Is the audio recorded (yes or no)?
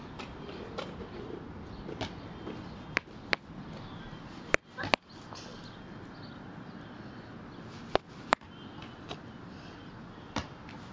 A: yes